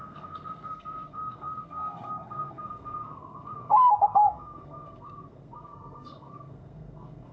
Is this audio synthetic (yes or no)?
yes